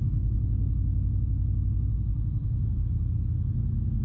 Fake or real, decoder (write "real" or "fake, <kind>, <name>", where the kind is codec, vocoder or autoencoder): real